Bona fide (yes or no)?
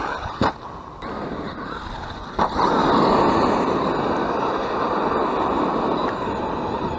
yes